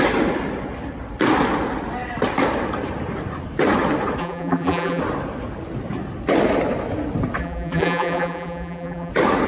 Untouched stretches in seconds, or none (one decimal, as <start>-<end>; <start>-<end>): 0.0-4.2; 5.0-7.4; 9.1-9.5